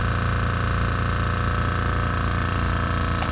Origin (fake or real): fake